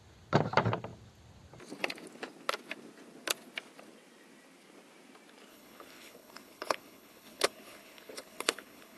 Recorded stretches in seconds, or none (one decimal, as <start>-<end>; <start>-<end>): 0.0-5.5